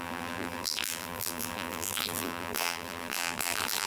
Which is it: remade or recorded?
remade